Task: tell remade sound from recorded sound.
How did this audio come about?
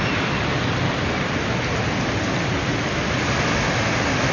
recorded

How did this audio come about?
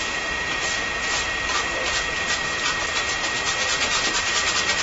recorded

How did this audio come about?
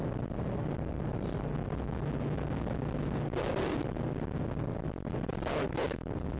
recorded